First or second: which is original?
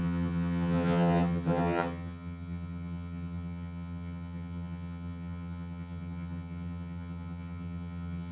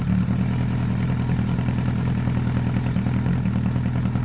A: second